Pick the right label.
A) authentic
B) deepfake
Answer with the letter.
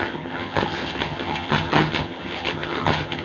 B